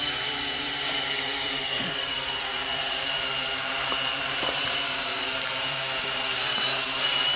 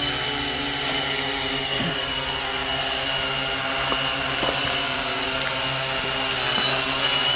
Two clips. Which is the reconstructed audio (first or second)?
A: first